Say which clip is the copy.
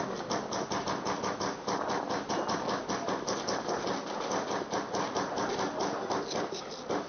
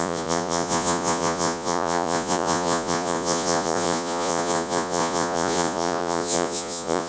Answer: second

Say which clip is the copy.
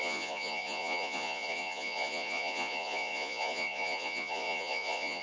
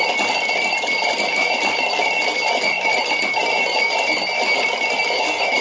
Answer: first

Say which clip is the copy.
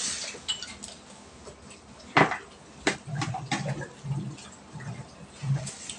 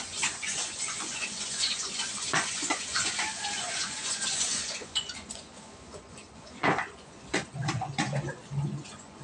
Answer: second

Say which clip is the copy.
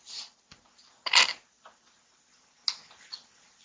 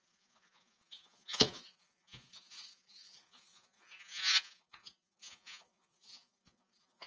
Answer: second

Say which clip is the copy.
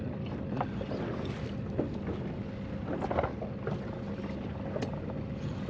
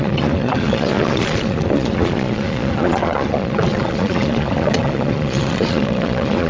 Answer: second